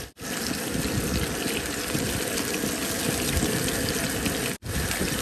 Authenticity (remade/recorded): recorded